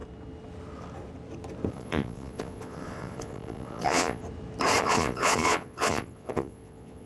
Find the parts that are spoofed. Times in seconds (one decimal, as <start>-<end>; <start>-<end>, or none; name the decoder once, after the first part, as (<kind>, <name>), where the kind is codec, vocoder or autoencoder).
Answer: 1.7-4.2 (vocoder, Vocos); 4.8-7.1